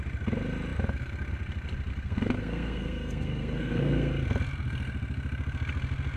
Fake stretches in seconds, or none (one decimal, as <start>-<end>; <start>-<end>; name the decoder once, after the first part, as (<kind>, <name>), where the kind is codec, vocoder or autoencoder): 1.9-4.1 (codec, SNAC)